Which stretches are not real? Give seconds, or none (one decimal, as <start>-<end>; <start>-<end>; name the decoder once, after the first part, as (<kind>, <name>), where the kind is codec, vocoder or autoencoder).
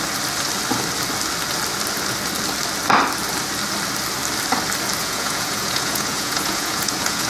5.0-7.3 (vocoder, Vocos)